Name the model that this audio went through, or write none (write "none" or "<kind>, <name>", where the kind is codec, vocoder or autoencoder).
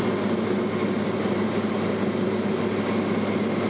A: none